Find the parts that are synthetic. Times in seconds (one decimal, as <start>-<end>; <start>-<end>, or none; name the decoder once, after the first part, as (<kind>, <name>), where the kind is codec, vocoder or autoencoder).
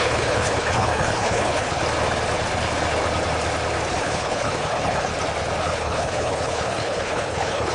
0.0-1.8 (codec, HILCodec); 3.9-5.1; 5.6-7.7